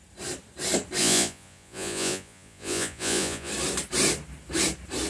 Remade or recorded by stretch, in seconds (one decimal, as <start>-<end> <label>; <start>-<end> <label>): 0.0-1.0 recorded; 1.0-3.5 remade; 3.5-5.1 recorded